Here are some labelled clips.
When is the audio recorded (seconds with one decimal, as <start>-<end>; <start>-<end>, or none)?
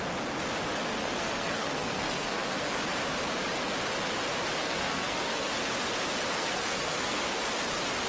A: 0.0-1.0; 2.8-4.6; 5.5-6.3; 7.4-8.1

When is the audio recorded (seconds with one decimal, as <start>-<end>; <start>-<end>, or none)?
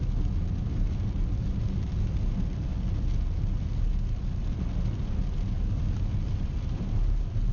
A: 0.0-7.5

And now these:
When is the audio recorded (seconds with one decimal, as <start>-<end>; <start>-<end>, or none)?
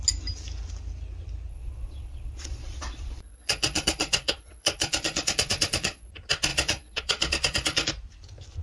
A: 0.0-1.5; 6.1-6.5; 7.9-8.6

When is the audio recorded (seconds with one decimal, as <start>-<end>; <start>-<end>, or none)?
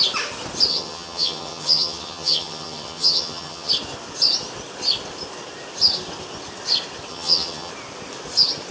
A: 0.0-0.7; 3.7-7.1; 7.7-8.7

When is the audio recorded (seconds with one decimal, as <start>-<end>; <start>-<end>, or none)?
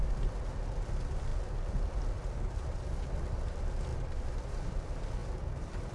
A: 0.0-3.9; 4.7-5.2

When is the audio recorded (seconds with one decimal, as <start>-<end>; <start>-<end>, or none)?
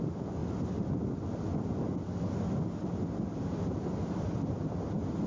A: 0.0-5.3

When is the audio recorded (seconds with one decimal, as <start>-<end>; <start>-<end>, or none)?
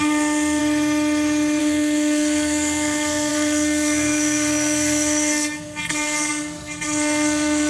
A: 0.6-1.6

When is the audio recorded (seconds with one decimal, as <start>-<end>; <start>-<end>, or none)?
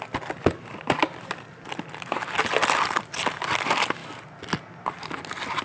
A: 0.0-5.6